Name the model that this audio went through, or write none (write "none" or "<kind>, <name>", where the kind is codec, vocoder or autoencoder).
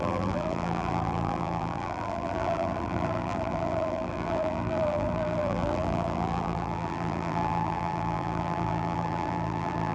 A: vocoder, BigVGAN v2